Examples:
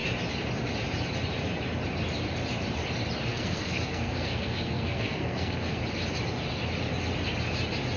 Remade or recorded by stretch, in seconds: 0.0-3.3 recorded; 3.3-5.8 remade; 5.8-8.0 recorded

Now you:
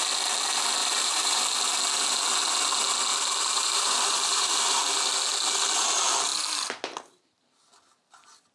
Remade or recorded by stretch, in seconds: 0.0-0.8 recorded; 0.8-1.4 remade; 1.4-3.1 recorded; 3.1-4.8 remade; 4.8-8.5 recorded

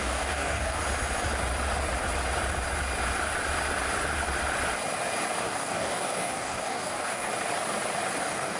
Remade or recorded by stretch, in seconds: 0.0-0.8 remade; 0.8-5.4 recorded; 5.4-7.3 remade; 7.3-8.2 recorded; 8.2-8.6 remade